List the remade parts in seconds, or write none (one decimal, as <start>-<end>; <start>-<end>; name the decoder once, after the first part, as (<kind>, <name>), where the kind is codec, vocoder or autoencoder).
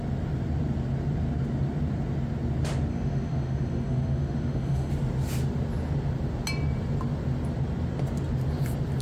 2.9-4.9 (autoencoder, DAC-VAE)